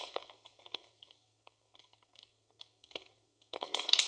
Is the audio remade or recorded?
remade